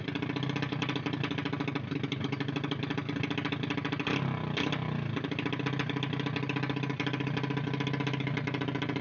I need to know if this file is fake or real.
real